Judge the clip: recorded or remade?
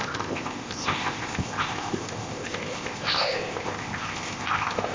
remade